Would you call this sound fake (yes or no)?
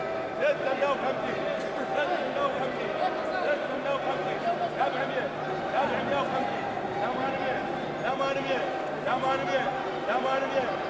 no